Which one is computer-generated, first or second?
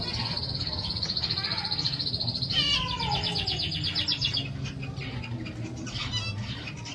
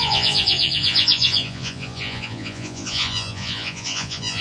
second